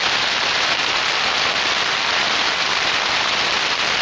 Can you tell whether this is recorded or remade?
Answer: recorded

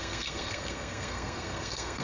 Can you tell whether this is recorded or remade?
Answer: remade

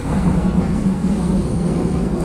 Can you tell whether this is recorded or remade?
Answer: remade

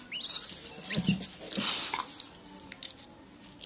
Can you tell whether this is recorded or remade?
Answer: recorded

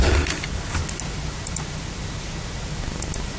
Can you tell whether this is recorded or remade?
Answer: recorded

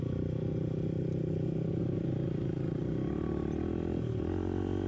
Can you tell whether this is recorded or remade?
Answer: recorded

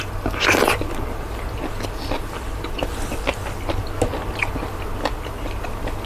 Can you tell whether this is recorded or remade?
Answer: recorded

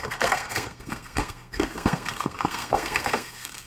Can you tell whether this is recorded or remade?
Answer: remade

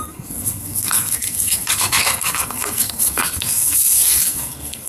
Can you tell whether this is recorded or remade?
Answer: remade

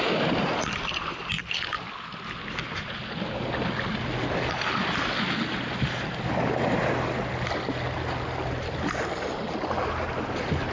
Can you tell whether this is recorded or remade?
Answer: recorded